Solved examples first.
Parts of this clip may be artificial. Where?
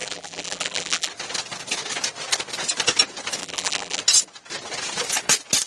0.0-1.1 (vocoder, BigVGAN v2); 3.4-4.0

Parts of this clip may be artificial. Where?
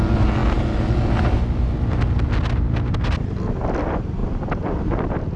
4.2-5.4 (vocoder, BigVGAN v2)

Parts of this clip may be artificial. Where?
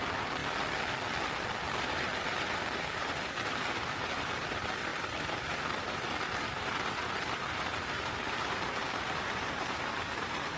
0.0-0.4 (vocoder, BigVGAN v2); 1.8-10.6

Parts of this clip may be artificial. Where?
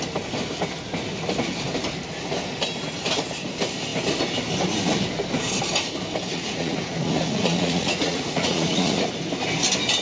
6.3-9.1 (vocoder, Vocos)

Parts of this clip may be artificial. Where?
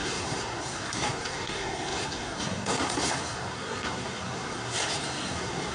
0.0-5.7 (codec, SNAC)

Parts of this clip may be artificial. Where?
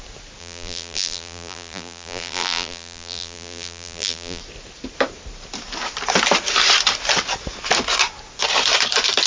0.4-4.4 (vocoder, BigVGAN v2)